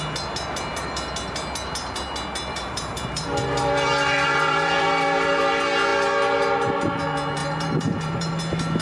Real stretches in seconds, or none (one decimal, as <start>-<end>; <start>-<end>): 0.0-2.5; 5.4-7.4; 8.4-8.8